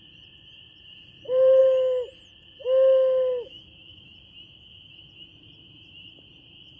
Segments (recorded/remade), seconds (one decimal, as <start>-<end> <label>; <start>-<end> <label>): 0.0-1.6 remade; 1.6-5.6 recorded; 5.6-6.8 remade